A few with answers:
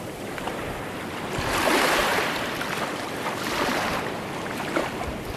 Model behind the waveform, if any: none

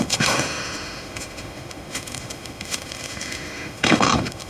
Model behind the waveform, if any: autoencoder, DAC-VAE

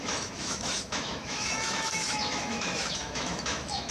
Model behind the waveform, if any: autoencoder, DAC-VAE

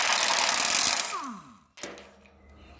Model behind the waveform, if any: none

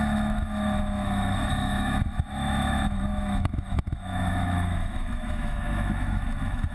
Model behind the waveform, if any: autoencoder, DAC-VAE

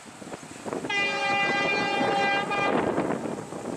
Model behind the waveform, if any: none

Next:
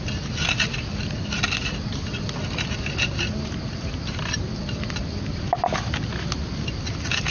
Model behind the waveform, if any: none